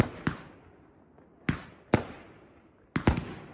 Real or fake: real